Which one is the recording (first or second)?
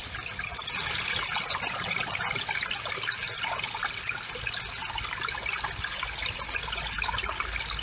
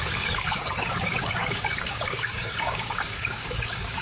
first